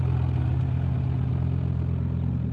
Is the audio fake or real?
real